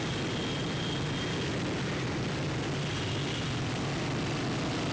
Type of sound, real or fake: real